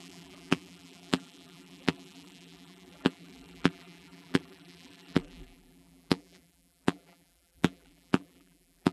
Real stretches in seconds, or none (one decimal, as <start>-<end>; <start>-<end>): none